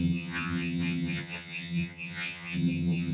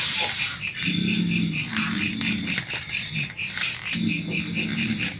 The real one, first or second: second